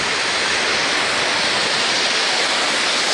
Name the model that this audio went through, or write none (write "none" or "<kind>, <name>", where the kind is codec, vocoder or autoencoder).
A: none